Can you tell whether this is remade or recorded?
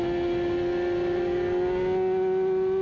recorded